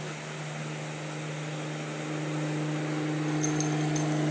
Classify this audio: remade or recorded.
recorded